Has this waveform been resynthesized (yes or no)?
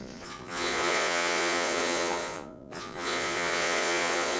yes